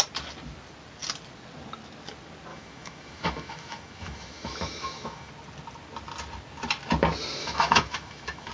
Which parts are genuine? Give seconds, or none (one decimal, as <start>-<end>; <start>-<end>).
0.0-2.5; 5.3-7.4